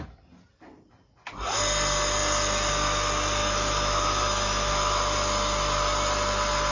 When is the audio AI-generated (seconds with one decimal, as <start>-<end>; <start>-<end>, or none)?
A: 3.4-4.7